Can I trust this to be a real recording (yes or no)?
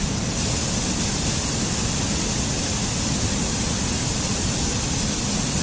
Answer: yes